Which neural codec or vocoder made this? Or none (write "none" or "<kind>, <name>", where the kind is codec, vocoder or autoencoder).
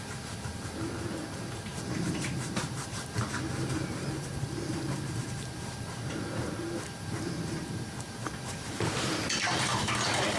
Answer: vocoder, BigVGAN v2